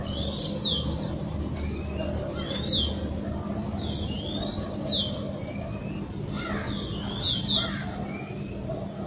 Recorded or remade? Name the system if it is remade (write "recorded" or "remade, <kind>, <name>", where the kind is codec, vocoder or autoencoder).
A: recorded